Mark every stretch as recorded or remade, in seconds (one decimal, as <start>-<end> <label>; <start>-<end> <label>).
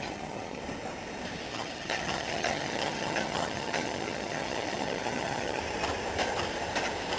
0.0-0.6 remade; 0.6-1.5 recorded; 1.5-5.6 remade; 5.6-7.2 recorded